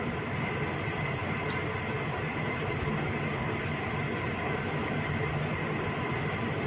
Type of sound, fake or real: real